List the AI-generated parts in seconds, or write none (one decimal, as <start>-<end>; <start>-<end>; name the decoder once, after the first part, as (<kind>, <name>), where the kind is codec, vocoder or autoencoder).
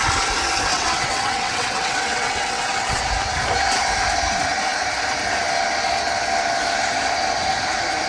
0.7-3.0 (vocoder, WaveNeXt)